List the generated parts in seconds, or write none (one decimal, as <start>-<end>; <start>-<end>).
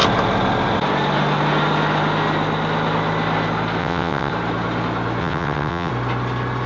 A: 3.8-4.3; 5.2-5.9